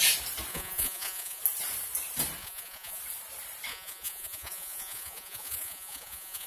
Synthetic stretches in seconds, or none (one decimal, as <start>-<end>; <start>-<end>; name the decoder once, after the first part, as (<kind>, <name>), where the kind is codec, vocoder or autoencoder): 0.5-1.4 (vocoder, Vocos); 2.4-3.0; 3.7-6.5